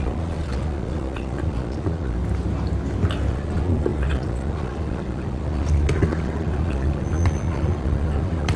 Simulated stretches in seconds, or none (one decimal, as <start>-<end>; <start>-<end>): 0.0-2.2; 3.3-8.6